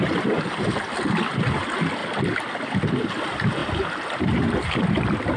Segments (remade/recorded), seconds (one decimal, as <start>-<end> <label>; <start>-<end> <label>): 0.0-5.4 recorded